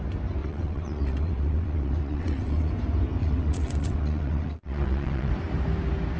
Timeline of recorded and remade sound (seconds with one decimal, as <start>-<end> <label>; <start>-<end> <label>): 0.0-0.4 recorded; 0.4-2.7 remade; 2.7-3.2 recorded; 3.2-5.3 remade; 5.3-6.2 recorded